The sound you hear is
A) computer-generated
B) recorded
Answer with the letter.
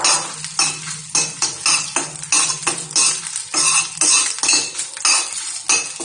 B